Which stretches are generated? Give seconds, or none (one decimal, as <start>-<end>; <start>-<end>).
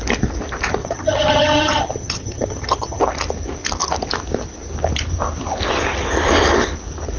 0.8-3.0